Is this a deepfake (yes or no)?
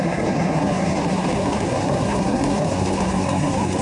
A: yes